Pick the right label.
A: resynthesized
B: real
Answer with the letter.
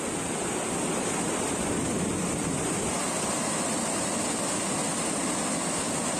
B